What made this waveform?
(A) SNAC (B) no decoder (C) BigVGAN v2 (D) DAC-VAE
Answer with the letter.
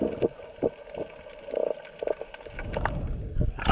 B